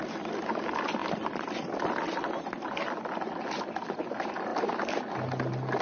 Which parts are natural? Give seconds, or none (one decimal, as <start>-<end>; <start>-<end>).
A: 0.0-1.0; 2.2-4.5